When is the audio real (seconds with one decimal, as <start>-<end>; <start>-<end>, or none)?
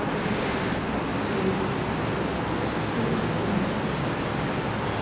0.0-5.0